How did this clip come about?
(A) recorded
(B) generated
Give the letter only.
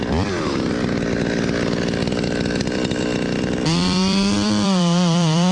B